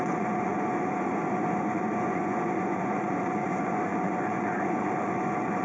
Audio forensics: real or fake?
fake